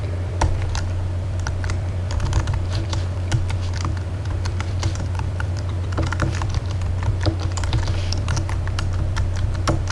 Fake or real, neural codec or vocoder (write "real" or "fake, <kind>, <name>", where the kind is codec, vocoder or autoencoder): fake, vocoder, BigVGAN v2